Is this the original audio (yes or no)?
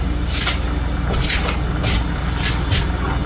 yes